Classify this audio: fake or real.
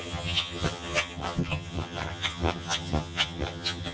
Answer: fake